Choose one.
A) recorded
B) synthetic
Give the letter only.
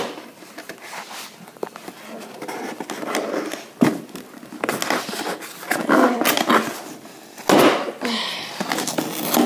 A